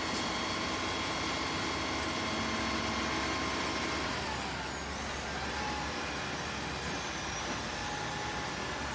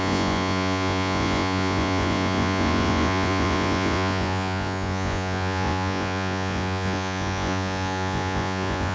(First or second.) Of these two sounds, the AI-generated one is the second